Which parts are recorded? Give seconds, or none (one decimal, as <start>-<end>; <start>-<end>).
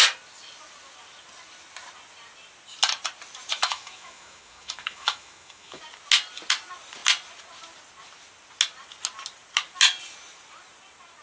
0.0-3.5; 5.8-11.2